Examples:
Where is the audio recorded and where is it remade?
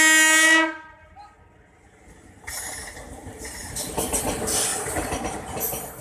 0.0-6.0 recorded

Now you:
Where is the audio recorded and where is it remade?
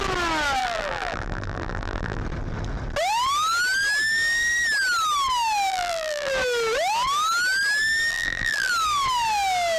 0.0-0.6 recorded; 0.6-2.2 remade; 2.2-5.7 recorded; 5.7-6.3 remade; 6.3-8.1 recorded; 8.1-8.7 remade; 8.7-9.8 recorded